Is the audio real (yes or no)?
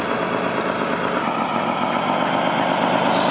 yes